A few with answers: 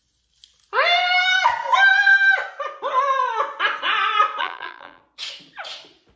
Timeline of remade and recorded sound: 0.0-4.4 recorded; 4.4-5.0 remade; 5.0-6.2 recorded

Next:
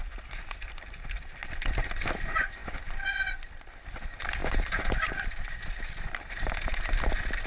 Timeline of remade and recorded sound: 0.0-4.4 recorded; 4.4-5.8 remade; 5.8-7.5 recorded

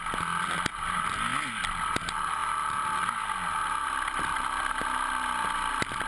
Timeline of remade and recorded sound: 0.0-6.1 recorded

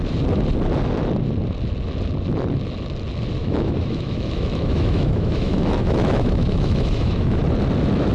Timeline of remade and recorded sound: 0.0-3.4 recorded; 3.4-7.4 remade; 7.4-8.1 recorded

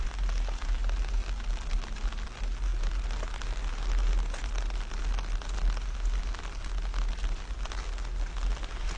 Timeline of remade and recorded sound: 0.0-9.0 recorded

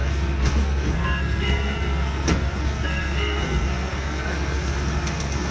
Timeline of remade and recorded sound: 0.0-5.5 remade

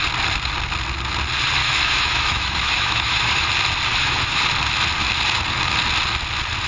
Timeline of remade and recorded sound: 0.0-1.6 recorded; 1.6-3.5 remade; 3.5-3.9 recorded; 3.9-4.4 remade; 4.4-6.7 recorded